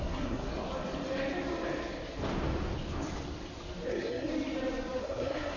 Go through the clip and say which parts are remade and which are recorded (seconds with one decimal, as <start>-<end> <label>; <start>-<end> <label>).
0.0-0.5 remade; 0.5-3.9 recorded; 3.9-4.3 remade; 4.3-5.0 recorded; 5.0-5.6 remade